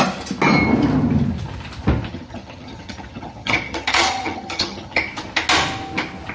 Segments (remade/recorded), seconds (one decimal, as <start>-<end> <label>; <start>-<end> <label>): 0.0-2.1 recorded; 2.1-5.0 remade; 5.0-6.3 recorded

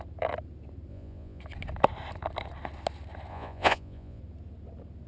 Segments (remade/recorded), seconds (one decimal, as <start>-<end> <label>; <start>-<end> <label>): 0.0-0.9 recorded; 0.9-1.4 remade; 1.4-3.3 recorded; 3.3-4.2 remade; 4.2-5.1 recorded

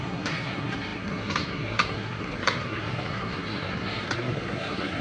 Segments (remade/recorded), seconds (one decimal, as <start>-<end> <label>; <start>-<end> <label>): 0.0-5.0 remade

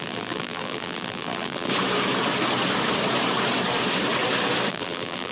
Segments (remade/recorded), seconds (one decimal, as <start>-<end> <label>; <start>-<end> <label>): 0.0-1.7 remade; 1.7-4.7 recorded; 4.7-5.3 remade

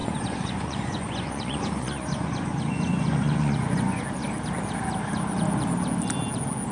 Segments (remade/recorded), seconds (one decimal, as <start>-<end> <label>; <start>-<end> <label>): 0.0-4.0 remade; 4.0-6.7 recorded

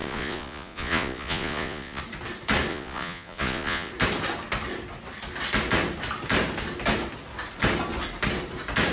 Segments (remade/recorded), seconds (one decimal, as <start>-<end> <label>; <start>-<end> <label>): 0.0-2.0 remade; 2.0-2.7 recorded; 2.7-3.9 remade; 3.9-8.9 recorded